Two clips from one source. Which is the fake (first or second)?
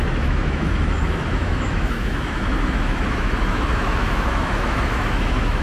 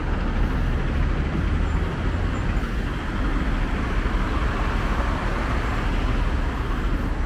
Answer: first